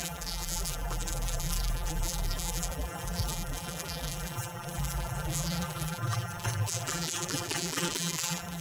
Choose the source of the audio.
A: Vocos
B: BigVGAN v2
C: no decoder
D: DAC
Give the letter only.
B